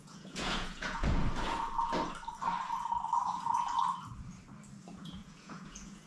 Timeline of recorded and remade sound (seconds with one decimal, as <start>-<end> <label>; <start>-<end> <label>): 0.0-1.2 remade; 1.2-4.9 recorded; 4.9-6.1 remade